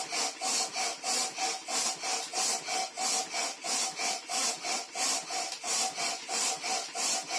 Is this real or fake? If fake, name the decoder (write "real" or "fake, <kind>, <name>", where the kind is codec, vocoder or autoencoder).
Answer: real